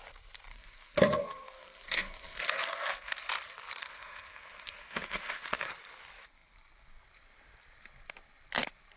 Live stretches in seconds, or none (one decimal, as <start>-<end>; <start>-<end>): 0.0-0.5; 3.3-3.8; 5.7-9.0